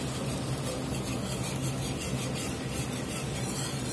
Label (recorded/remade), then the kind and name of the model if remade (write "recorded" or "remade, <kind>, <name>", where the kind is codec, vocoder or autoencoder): recorded